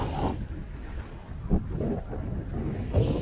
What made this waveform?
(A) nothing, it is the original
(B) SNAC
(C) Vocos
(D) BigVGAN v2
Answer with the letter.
A